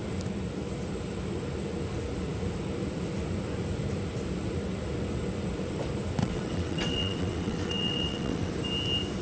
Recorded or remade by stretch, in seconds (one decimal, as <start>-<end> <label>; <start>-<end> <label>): 0.0-6.2 recorded; 6.2-8.5 remade; 8.5-9.2 recorded